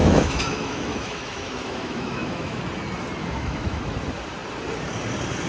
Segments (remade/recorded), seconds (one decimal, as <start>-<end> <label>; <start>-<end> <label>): 0.0-2.6 remade; 2.6-3.2 recorded; 3.2-3.8 remade; 3.8-5.5 recorded